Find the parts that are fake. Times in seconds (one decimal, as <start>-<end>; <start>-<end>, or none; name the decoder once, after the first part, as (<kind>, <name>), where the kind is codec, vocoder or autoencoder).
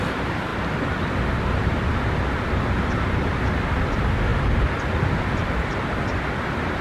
none